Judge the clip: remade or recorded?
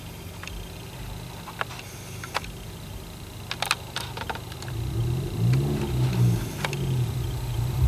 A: recorded